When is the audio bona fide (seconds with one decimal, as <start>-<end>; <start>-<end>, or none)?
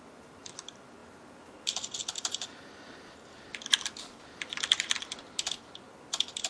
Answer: 0.0-6.5